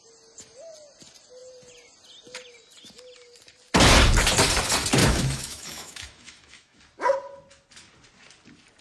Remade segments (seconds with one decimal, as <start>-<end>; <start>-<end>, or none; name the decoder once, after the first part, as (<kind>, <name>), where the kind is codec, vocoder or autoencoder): 5.0-6.8 (autoencoder, DAC-VAE)